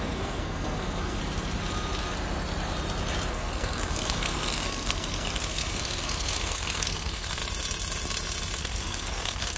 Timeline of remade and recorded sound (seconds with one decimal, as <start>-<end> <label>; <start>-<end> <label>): 0.0-1.2 remade; 1.2-3.3 recorded; 3.3-7.4 remade; 7.4-8.6 recorded; 8.6-9.6 remade